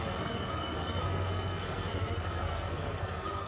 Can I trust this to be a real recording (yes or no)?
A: no